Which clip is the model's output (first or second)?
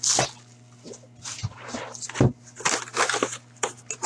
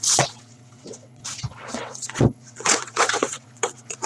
second